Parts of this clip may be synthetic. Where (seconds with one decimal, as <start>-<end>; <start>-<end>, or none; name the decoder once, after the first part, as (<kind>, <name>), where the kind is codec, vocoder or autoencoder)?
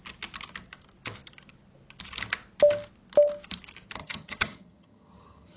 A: 4.0-5.6 (vocoder, HiFi-GAN)